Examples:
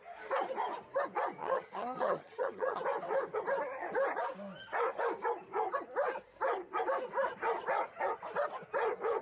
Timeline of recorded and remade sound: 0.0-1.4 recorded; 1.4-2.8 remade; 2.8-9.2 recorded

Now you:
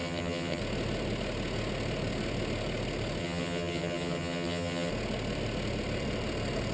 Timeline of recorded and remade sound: 0.0-0.6 remade; 0.6-3.2 recorded; 3.2-4.9 remade; 4.9-6.7 recorded

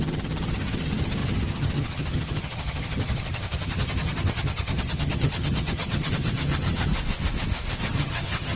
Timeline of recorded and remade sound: 0.0-6.9 remade; 6.9-7.8 recorded; 7.8-8.6 remade

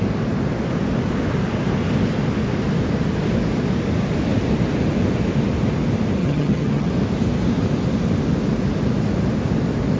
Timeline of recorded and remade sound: 0.0-6.2 recorded; 6.2-6.9 remade; 6.9-10.0 recorded

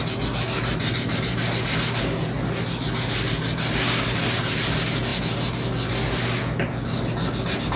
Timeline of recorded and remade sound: 0.0-7.8 recorded